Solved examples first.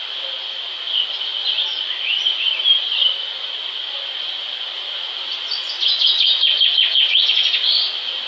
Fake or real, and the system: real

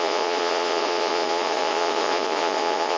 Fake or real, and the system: fake, vocoder, Vocos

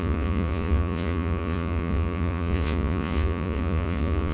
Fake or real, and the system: fake, vocoder, Vocos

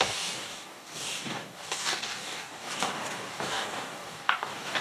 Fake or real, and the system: fake, codec, DAC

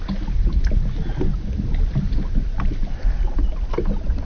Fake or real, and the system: real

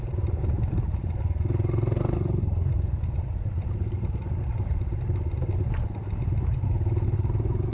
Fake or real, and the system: real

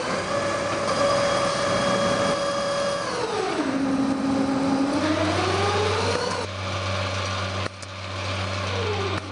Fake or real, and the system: real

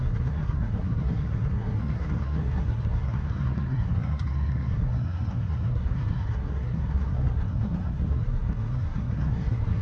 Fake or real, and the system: fake, codec, SNAC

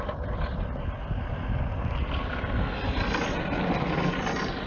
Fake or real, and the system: real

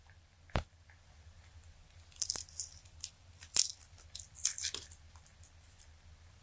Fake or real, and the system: fake, vocoder, BigVGAN v2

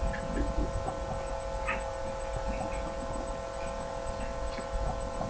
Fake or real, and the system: real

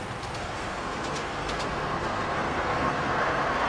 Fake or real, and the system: fake, codec, SNAC